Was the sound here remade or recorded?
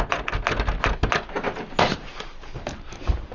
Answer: recorded